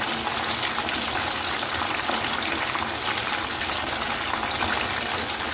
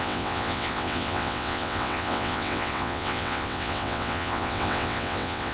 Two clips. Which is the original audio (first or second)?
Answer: first